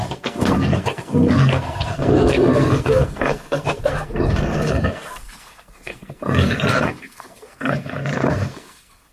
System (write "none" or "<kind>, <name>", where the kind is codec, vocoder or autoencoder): codec, SNAC